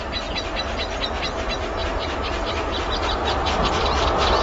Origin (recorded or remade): recorded